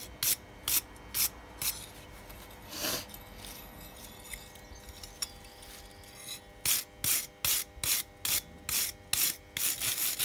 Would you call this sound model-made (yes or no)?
no